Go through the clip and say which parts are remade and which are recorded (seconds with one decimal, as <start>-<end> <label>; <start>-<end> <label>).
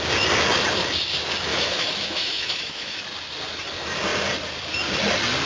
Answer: 0.0-1.5 recorded; 1.5-3.0 remade; 3.0-5.5 recorded